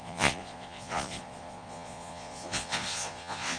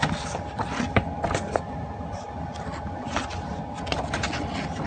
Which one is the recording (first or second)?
second